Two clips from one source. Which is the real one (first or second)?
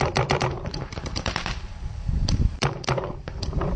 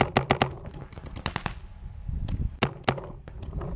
second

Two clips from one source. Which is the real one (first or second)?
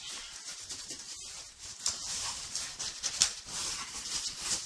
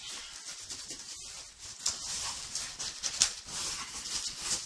second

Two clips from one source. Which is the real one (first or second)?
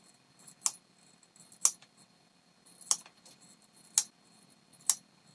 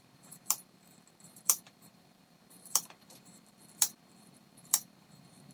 first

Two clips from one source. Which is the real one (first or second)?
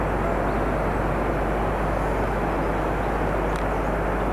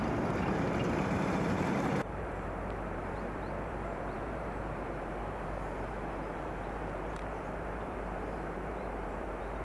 first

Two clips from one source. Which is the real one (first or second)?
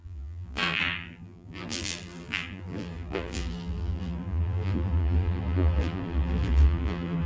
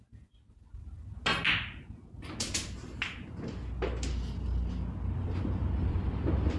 second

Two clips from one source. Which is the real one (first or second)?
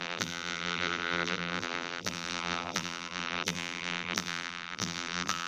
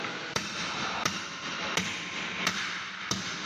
second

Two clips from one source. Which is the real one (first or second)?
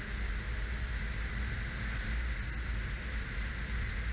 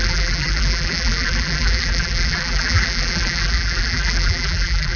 first